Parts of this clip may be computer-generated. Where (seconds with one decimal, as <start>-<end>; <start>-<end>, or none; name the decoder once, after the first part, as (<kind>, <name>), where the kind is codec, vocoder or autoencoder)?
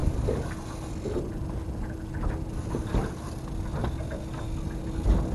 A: none